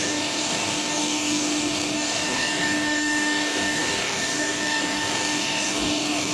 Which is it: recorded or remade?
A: remade